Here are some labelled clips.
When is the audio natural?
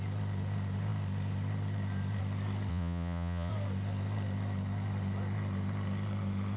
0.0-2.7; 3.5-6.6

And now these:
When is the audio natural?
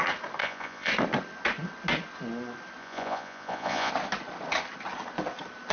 0.0-0.4; 0.9-2.8; 3.9-5.7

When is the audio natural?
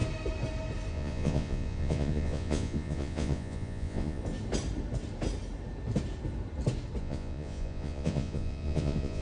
0.0-0.9; 4.2-7.0